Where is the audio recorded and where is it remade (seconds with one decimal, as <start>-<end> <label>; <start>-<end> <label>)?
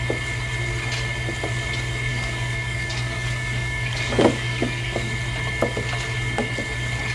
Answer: 0.0-2.1 recorded; 2.1-5.1 remade; 5.1-7.1 recorded